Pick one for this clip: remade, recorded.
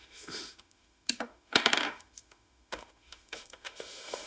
remade